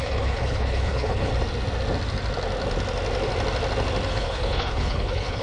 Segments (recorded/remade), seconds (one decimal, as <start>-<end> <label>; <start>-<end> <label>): 0.0-1.3 remade; 1.3-4.1 recorded; 4.1-5.4 remade